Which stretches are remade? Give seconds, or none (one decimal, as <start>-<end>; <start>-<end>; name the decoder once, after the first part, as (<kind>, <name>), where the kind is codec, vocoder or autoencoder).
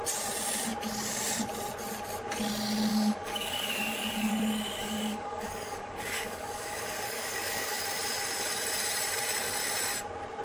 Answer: 2.9-4.3 (codec, DAC); 4.8-7.8